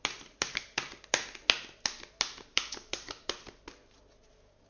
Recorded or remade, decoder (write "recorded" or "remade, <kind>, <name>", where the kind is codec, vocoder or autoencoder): recorded